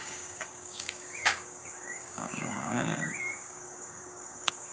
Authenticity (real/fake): fake